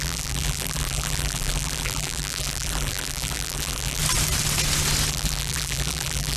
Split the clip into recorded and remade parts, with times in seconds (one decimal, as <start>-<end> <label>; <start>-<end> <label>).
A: 0.0-4.0 remade; 4.0-5.1 recorded; 5.1-6.4 remade